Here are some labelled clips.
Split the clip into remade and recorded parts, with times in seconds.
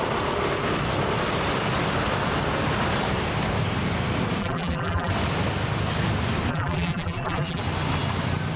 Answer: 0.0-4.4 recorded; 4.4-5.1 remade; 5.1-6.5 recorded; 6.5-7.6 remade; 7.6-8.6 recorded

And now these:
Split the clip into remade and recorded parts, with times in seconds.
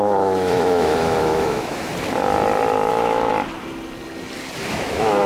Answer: 0.0-1.9 remade; 1.9-2.9 recorded; 2.9-3.3 remade; 3.3-4.7 recorded; 4.7-5.3 remade